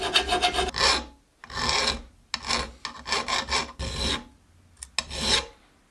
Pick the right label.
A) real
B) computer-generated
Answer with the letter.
A